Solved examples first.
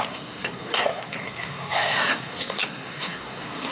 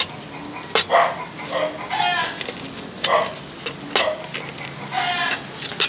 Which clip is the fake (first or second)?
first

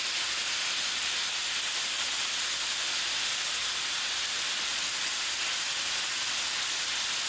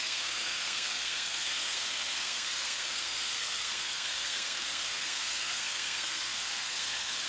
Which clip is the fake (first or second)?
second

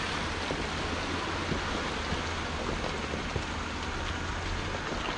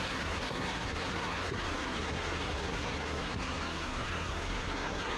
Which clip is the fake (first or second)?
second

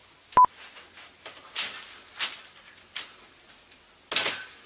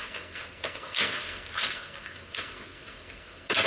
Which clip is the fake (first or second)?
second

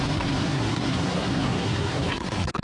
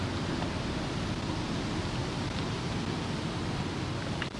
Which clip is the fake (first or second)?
first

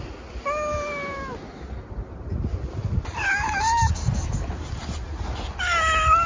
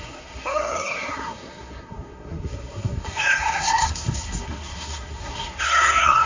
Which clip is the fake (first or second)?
second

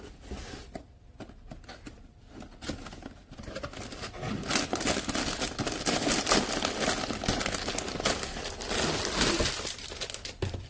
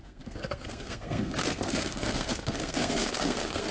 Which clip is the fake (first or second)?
second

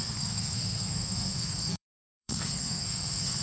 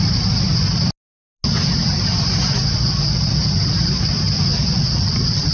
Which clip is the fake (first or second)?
first